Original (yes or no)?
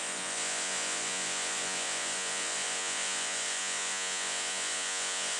no